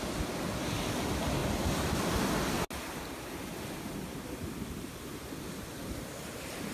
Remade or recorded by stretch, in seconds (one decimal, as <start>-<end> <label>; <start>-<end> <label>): 0.0-6.7 recorded